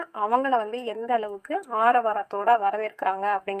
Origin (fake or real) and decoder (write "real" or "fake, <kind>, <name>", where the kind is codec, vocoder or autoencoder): fake, codec, SNAC